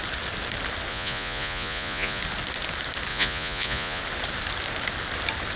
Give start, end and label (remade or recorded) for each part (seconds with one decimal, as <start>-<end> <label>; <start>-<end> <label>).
0.0-0.9 recorded; 0.9-2.2 remade; 2.2-3.1 recorded; 3.1-4.0 remade; 4.0-5.6 recorded

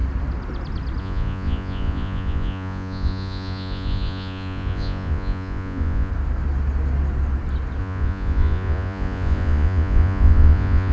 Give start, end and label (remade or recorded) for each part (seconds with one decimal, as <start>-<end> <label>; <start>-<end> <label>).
0.0-1.0 recorded; 1.0-6.1 remade; 6.1-7.8 recorded; 7.8-10.9 remade

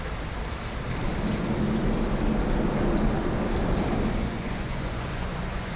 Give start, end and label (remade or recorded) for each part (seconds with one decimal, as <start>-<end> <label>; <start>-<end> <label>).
0.0-4.2 recorded; 4.2-5.8 remade

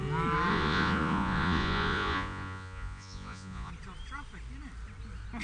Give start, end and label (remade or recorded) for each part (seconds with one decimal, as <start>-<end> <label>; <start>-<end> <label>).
0.0-0.5 recorded; 0.5-3.7 remade; 3.7-5.4 recorded

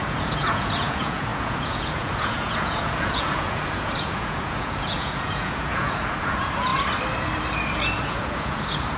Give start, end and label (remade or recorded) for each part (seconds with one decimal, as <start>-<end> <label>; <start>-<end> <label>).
0.0-6.7 remade; 6.7-8.0 recorded; 8.0-9.0 remade

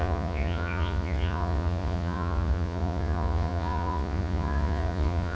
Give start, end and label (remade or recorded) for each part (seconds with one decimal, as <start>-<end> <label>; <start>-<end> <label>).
0.0-5.3 remade